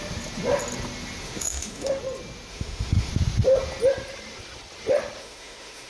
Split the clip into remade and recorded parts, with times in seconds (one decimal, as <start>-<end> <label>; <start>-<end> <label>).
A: 0.0-1.2 recorded; 1.2-2.0 remade; 2.0-2.5 recorded; 2.5-3.1 remade; 3.1-5.2 recorded; 5.2-5.9 remade